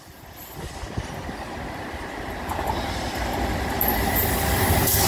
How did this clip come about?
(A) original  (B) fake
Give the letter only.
A